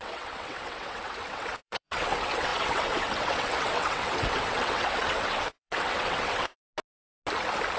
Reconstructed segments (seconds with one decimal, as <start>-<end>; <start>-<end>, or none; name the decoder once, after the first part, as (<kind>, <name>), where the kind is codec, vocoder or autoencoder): 0.0-6.6 (vocoder, WaveNeXt)